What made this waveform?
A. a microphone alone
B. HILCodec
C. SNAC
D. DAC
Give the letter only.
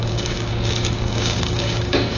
D